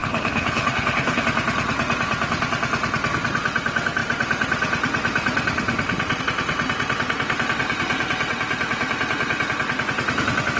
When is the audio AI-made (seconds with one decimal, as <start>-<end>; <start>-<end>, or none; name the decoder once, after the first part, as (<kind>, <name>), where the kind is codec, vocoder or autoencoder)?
0.0-1.2 (codec, HILCodec)